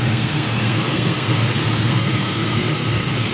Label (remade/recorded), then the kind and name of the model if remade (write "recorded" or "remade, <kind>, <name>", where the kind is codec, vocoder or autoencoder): remade, codec, SNAC